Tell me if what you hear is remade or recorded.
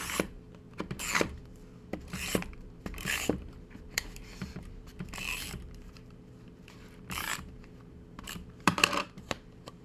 remade